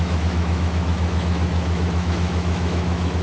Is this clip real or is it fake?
fake